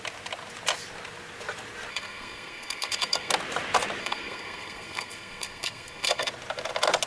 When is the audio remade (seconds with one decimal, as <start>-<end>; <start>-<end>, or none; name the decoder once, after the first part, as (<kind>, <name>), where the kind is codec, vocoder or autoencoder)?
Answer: 1.9-3.3 (codec, SNAC); 4.0-6.3